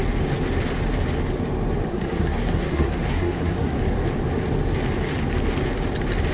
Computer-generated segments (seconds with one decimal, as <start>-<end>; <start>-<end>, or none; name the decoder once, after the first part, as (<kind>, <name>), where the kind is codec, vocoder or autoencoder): 1.9-3.8 (codec, SNAC)